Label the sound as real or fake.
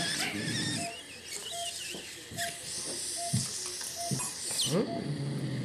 real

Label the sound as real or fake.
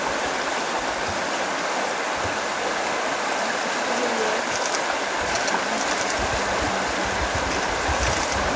real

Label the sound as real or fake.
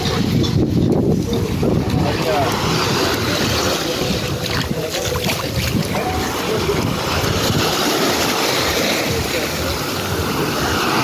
real